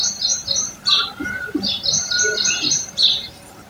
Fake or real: fake